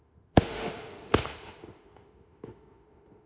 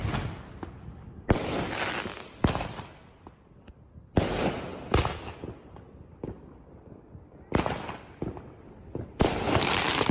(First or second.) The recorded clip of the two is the second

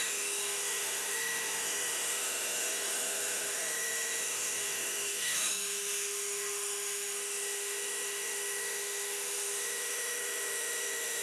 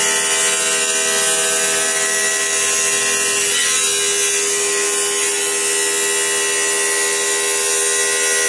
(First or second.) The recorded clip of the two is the second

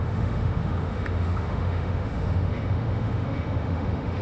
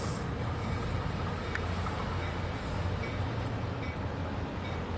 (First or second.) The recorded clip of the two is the second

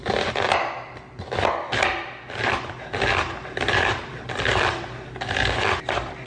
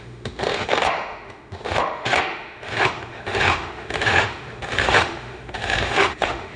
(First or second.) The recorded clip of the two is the first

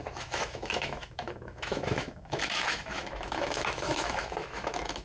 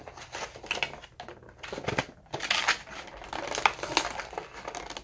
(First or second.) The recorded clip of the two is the second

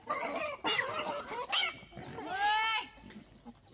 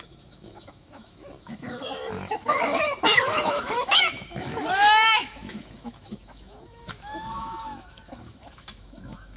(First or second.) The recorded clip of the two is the first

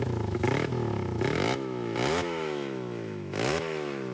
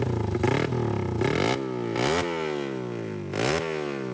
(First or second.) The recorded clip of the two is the second